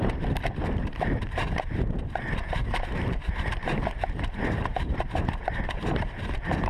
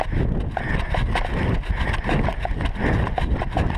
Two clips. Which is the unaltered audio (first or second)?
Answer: second